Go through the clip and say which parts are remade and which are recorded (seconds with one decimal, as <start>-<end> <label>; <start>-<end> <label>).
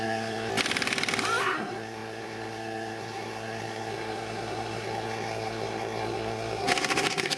0.0-0.5 remade; 0.5-1.4 recorded; 1.4-7.4 remade